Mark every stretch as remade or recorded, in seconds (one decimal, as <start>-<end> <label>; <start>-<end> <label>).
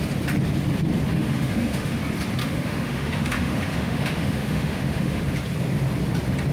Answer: 0.0-1.1 recorded; 1.1-2.0 remade; 2.0-2.4 recorded; 2.4-5.2 remade; 5.2-6.5 recorded